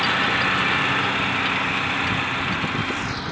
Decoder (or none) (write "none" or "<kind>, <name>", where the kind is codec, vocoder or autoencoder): none